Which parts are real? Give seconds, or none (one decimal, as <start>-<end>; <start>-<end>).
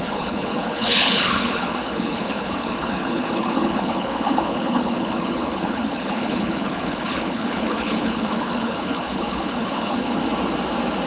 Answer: 10.2-11.1